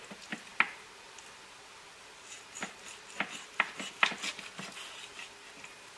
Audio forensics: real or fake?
real